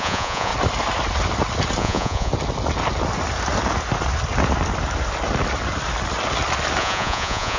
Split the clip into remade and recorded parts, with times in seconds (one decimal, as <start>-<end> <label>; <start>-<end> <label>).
0.0-0.5 remade; 0.5-1.8 recorded; 1.8-2.3 remade; 2.3-6.8 recorded; 6.8-7.6 remade